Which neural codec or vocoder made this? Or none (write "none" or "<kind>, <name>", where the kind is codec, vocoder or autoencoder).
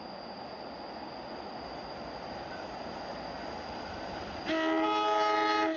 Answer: none